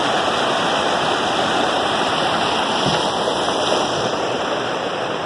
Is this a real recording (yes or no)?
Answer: yes